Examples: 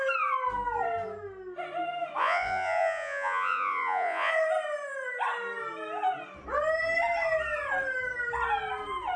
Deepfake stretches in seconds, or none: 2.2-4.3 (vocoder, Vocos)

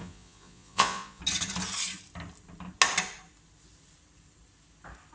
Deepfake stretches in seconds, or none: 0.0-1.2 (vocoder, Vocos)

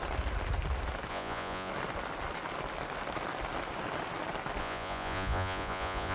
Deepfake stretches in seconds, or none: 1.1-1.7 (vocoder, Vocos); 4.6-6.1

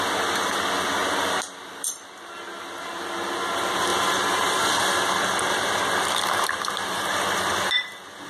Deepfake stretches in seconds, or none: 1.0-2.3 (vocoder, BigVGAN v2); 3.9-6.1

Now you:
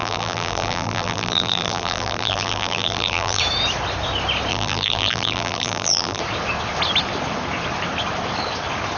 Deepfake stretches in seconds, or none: 0.0-3.4 (vocoder, BigVGAN v2); 4.5-6.2

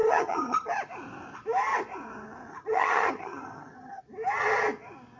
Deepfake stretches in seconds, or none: 0.0-0.7 (vocoder, HiFi-GAN); 2.5-4.0

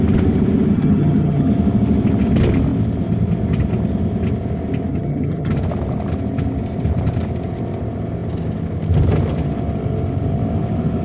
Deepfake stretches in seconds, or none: 0.7-1.5 (vocoder, HiFi-GAN); 4.9-5.5

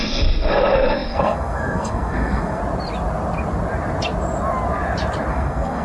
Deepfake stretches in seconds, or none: 0.0-2.6 (codec, SNAC); 5.3-5.8